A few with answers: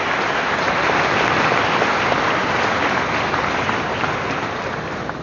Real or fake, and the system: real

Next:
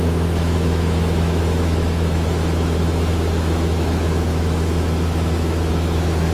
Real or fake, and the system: fake, autoencoder, DAC-VAE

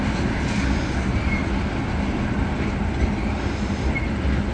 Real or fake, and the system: real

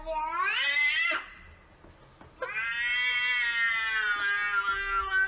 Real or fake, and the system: real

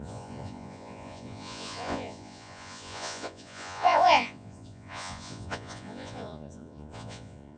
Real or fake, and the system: fake, vocoder, Vocos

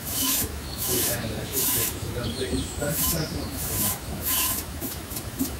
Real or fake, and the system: fake, autoencoder, DAC-VAE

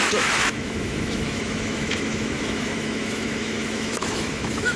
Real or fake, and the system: fake, autoencoder, DAC-VAE